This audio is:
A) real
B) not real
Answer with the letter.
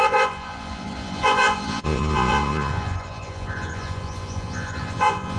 B